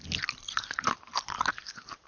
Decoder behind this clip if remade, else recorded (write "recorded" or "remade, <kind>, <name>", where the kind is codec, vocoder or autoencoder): recorded